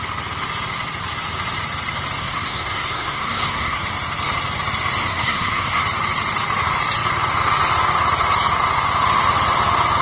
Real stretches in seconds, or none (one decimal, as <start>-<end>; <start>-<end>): 0.0-2.2; 3.8-5.0; 5.8-10.0